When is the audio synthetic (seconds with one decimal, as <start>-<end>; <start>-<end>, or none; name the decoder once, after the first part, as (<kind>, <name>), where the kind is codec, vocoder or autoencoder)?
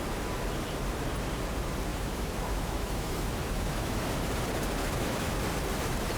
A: 1.9-4.1 (autoencoder, DAC-VAE); 4.8-5.4